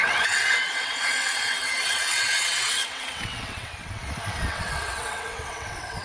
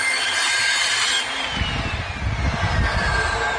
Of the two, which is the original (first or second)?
second